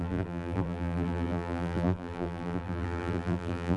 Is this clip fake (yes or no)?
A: yes